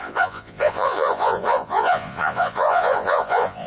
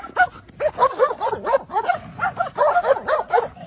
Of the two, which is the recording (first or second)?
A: second